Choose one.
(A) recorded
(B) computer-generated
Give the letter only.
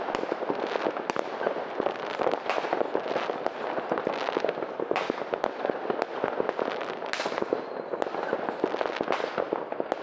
A